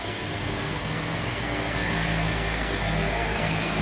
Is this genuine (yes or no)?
no